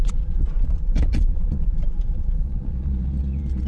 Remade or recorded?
remade